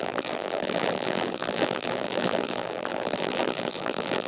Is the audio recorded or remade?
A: remade